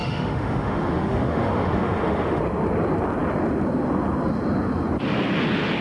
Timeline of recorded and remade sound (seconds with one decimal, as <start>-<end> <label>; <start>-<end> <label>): 0.0-2.4 remade; 2.4-5.8 recorded

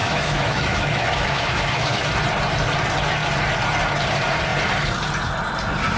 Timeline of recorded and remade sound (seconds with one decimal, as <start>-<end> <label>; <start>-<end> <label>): 0.0-2.1 remade; 2.1-6.0 recorded